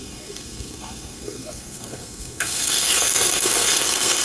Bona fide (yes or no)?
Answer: no